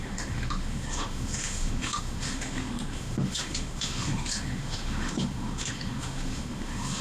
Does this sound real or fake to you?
fake